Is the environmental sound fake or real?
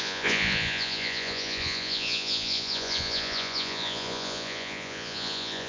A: fake